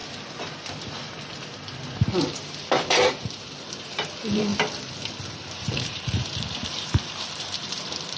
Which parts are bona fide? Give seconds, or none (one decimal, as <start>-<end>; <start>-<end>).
0.0-2.2; 4.5-5.3